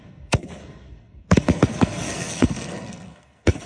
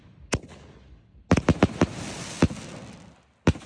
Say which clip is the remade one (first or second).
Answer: first